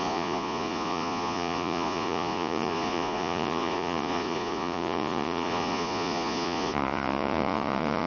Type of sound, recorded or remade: remade